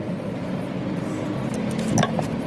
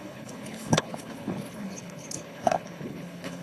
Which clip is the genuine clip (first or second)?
first